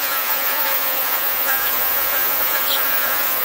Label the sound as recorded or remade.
remade